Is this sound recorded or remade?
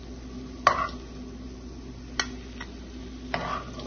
recorded